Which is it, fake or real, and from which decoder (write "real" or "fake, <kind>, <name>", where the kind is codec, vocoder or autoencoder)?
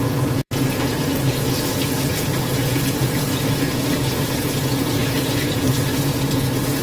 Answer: fake, vocoder, Vocos